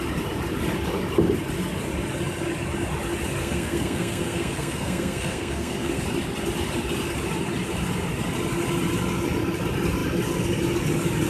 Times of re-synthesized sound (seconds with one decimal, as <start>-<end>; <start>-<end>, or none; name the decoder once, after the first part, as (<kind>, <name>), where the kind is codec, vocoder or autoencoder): 3.4-6.0 (codec, SNAC)